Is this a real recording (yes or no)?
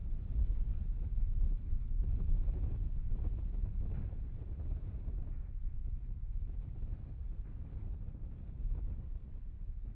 yes